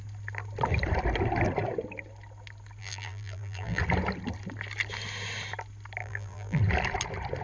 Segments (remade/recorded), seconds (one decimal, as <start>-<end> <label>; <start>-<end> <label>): 0.0-2.8 recorded; 2.8-3.8 remade; 3.8-6.0 recorded; 6.0-6.6 remade; 6.6-7.4 recorded